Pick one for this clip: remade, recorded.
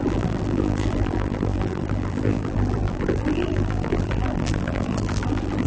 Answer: remade